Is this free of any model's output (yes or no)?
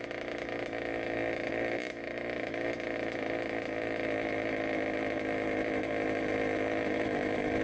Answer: no